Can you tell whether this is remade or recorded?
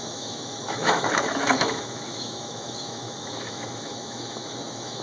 remade